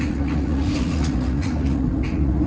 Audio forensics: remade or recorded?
remade